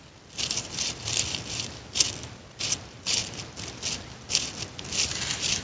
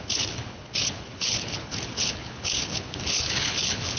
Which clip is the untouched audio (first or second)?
first